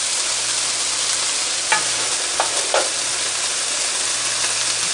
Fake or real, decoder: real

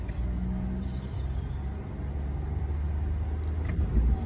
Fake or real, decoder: real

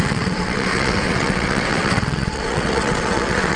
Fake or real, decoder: fake, vocoder, WaveNeXt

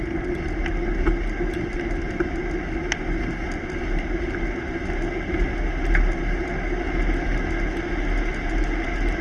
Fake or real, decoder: real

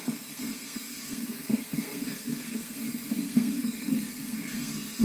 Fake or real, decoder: fake, codec, SNAC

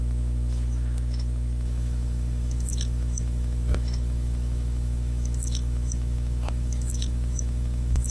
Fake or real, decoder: fake, autoencoder, DAC-VAE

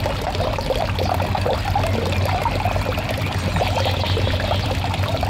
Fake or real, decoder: real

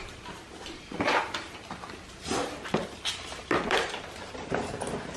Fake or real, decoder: fake, vocoder, BigVGAN v2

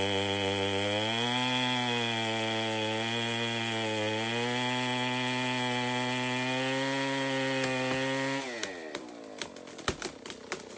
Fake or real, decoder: real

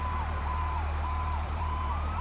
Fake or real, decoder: fake, vocoder, BigVGAN v2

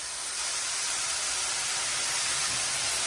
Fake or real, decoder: real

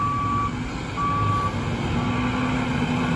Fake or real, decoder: real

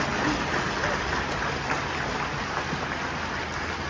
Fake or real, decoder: real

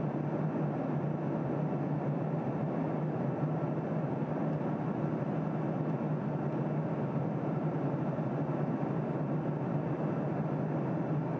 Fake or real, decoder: real